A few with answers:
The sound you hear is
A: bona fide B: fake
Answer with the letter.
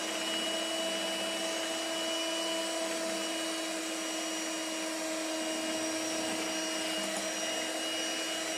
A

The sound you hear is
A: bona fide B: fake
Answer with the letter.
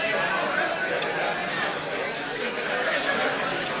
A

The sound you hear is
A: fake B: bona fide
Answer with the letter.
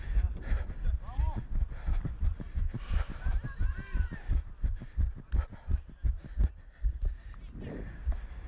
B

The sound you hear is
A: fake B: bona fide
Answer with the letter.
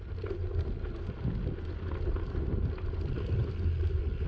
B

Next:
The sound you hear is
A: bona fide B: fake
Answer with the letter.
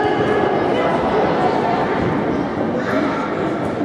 A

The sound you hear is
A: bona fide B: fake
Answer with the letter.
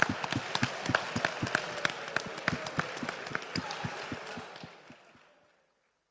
A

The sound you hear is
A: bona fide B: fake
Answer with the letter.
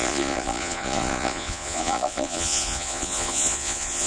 B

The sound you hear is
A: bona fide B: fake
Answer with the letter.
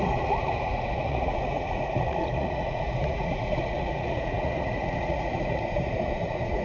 B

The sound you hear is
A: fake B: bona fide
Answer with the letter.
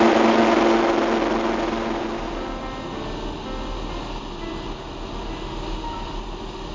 B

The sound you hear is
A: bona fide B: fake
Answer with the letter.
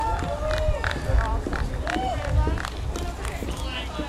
A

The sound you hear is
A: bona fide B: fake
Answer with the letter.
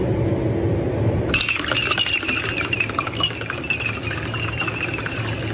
A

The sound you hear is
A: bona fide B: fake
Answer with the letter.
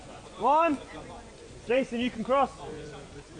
B